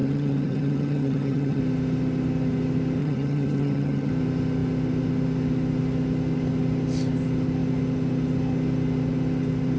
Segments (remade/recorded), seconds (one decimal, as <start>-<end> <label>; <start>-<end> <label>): 0.0-1.6 remade; 1.6-3.0 recorded; 3.0-4.1 remade; 4.1-9.8 recorded